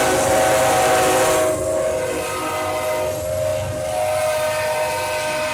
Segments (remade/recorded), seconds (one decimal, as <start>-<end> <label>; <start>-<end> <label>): 0.0-5.5 recorded